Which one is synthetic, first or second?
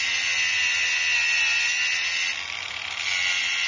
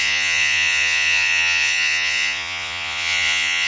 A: second